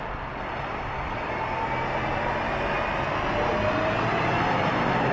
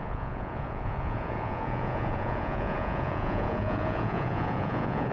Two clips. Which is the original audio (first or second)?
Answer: first